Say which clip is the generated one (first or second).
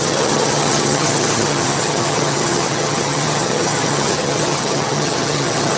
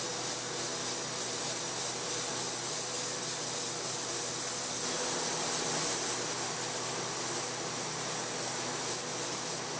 first